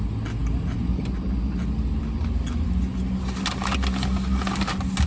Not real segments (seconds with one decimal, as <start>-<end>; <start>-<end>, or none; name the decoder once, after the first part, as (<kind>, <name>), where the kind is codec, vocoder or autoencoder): none